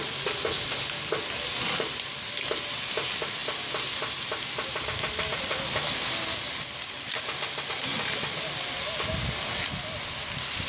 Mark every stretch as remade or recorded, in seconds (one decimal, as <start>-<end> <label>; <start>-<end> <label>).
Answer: 0.0-10.7 recorded